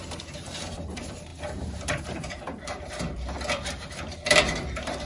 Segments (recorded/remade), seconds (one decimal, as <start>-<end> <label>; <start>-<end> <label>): 0.0-5.1 remade